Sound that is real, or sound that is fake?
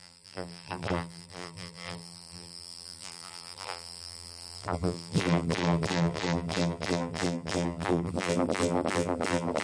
fake